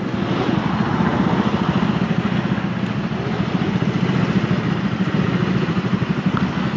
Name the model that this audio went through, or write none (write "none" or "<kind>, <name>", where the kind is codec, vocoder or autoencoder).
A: none